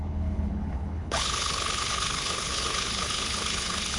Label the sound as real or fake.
fake